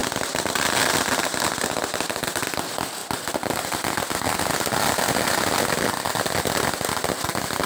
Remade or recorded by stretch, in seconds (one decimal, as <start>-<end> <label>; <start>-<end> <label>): 0.0-7.7 recorded